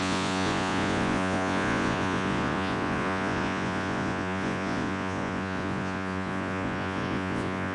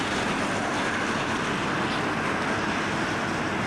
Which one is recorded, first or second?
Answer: second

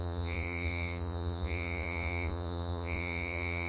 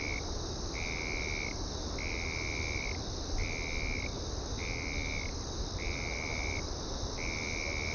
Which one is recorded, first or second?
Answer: second